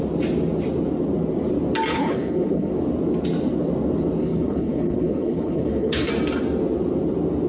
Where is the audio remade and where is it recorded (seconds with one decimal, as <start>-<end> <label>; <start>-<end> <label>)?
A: 0.0-1.9 recorded; 1.9-2.7 remade; 2.7-4.2 recorded; 4.2-6.1 remade; 6.1-7.5 recorded